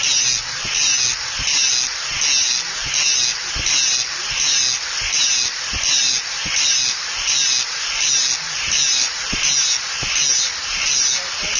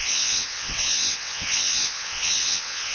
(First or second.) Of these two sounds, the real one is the first